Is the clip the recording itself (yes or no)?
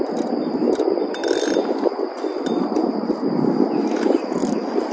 yes